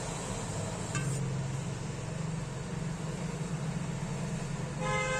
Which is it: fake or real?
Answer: real